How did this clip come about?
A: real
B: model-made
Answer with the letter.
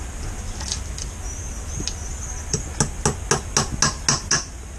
A